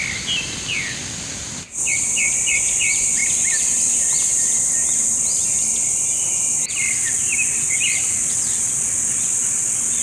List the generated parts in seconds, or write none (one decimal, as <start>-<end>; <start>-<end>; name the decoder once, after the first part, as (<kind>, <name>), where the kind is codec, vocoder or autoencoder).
none